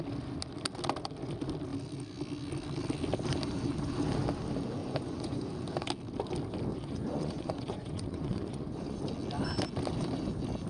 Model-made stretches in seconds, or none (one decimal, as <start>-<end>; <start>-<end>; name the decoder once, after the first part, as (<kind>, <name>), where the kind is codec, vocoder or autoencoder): 4.8-5.5 (vocoder, Vocos); 6.7-9.0